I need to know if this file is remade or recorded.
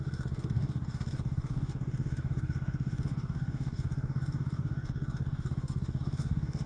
remade